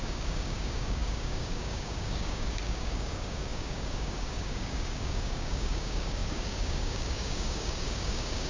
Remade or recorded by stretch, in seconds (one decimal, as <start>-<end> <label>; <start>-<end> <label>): 0.0-8.5 remade

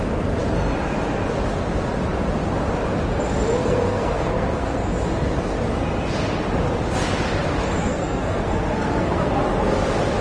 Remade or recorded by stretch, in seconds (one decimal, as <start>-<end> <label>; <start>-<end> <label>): 0.0-3.6 recorded; 3.6-4.9 remade; 4.9-7.8 recorded; 7.8-9.3 remade; 9.3-10.2 recorded

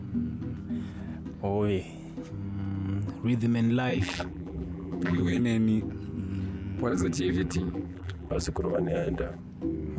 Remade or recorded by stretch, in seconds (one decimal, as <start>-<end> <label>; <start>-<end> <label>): 0.0-3.9 recorded; 3.9-5.4 remade; 5.4-6.9 recorded; 6.9-9.4 remade; 9.4-10.0 recorded

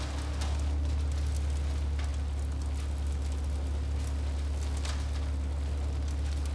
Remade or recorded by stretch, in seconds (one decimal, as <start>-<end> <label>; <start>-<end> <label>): 0.0-6.5 recorded

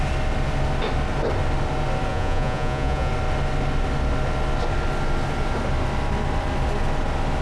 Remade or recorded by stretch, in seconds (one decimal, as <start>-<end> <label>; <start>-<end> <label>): 0.0-2.1 recorded; 2.1-3.1 remade; 3.1-7.4 recorded

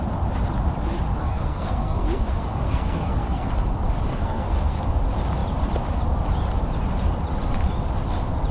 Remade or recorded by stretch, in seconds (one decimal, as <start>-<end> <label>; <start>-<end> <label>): 0.0-1.2 recorded; 1.2-3.5 remade; 3.5-4.1 recorded; 4.1-4.8 remade; 4.8-8.5 recorded

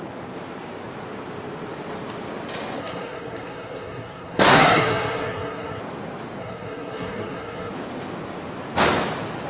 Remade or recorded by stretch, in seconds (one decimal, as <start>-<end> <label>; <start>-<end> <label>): 0.0-2.8 recorded; 2.8-5.8 remade; 5.8-6.4 recorded; 6.4-7.7 remade; 7.7-9.5 recorded